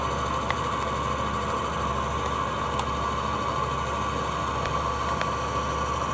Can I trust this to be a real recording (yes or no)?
yes